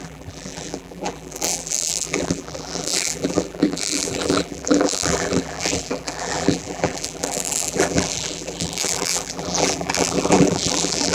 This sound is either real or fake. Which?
fake